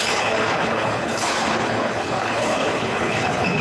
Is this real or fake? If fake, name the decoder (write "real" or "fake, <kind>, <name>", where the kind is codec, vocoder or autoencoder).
fake, codec, HILCodec